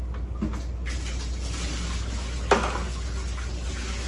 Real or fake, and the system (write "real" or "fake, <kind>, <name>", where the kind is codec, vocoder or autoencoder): real